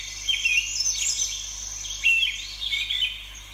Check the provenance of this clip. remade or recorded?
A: recorded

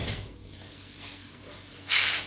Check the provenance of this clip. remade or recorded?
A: remade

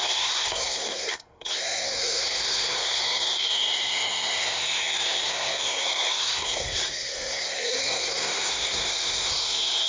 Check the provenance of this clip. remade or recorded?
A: remade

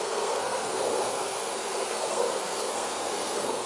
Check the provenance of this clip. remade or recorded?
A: remade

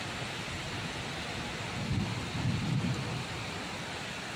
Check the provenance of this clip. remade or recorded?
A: recorded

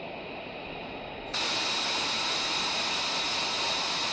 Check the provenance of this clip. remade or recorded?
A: recorded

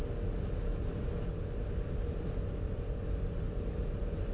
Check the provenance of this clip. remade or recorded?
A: recorded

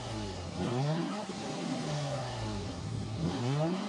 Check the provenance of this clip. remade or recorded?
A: remade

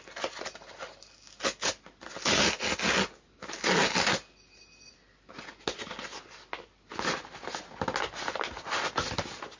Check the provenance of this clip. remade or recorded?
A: recorded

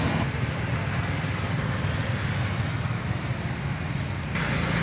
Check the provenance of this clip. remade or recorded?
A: recorded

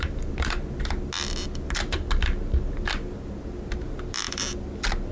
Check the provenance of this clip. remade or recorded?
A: recorded